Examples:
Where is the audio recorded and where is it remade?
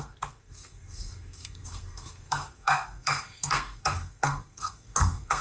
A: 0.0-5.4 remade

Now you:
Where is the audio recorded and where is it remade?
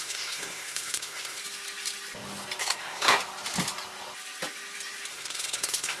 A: 0.0-1.4 remade; 1.4-2.6 recorded; 2.6-3.2 remade; 3.2-5.1 recorded; 5.1-6.0 remade